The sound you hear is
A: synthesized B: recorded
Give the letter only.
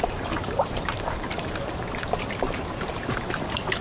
A